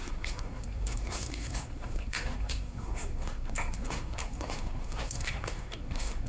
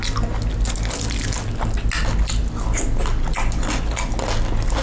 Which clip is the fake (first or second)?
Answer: first